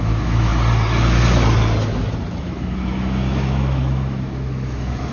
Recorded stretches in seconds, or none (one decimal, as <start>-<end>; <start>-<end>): 0.5-2.4